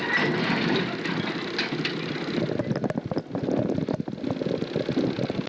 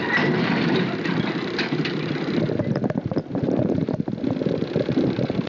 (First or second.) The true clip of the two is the first